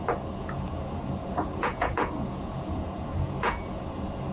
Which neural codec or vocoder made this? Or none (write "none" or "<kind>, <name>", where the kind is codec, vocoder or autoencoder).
vocoder, Vocos